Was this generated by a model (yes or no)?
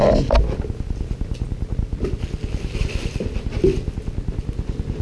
no